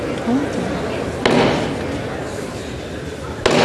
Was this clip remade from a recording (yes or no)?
no